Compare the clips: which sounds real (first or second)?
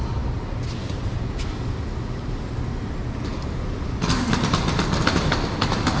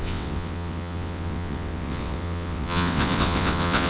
first